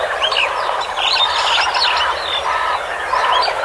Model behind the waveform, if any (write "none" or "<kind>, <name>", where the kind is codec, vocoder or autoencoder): none